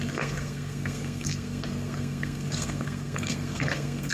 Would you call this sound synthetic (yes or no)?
yes